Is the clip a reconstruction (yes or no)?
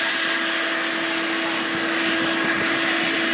no